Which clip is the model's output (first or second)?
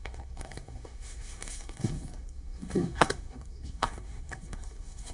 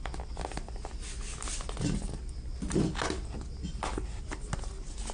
first